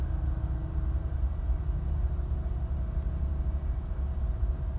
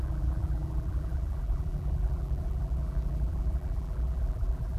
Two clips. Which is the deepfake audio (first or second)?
second